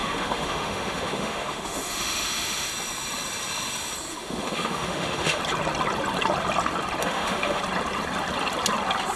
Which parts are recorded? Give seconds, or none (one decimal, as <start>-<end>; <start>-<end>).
2.7-4.1; 5.4-7.0; 7.6-9.2